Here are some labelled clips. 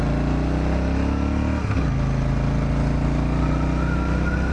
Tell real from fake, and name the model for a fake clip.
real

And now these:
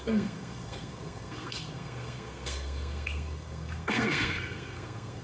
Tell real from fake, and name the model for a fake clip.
fake, codec, SNAC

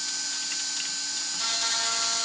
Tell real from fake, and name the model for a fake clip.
real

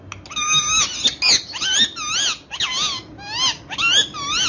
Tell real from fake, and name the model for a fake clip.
real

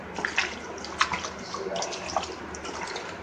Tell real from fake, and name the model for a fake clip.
real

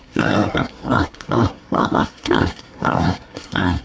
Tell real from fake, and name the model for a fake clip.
fake, codec, SNAC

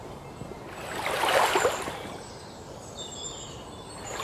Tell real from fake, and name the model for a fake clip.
real